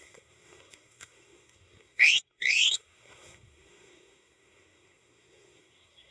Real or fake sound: fake